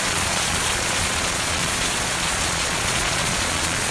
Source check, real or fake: fake